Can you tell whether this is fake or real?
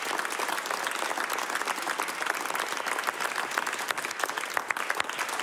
real